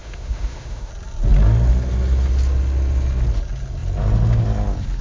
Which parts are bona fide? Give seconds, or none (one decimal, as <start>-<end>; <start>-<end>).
0.9-5.0